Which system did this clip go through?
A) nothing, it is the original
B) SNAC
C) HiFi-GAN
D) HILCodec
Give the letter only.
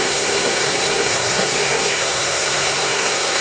B